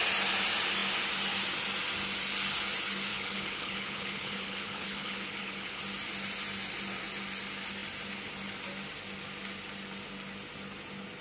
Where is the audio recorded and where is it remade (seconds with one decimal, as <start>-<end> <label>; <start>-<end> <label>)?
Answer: 0.0-3.1 recorded; 3.1-5.8 remade; 5.8-11.2 recorded

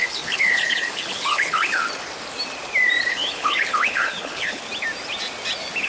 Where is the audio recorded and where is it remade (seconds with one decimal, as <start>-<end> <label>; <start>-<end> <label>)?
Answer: 0.0-1.8 remade; 1.8-3.1 recorded; 3.1-4.6 remade; 4.6-5.9 recorded

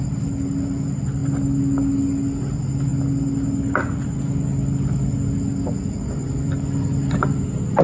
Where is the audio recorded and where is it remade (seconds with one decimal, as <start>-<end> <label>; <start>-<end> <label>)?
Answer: 0.0-7.8 recorded